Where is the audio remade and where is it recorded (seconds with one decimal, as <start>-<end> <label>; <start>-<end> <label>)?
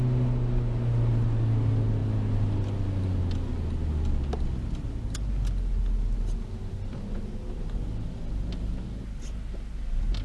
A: 0.0-10.2 recorded